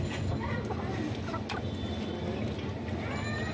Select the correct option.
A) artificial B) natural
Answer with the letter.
B